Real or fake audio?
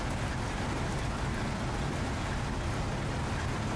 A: real